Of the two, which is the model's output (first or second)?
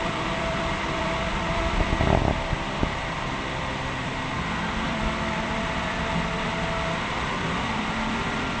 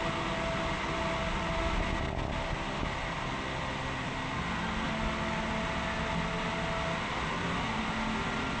first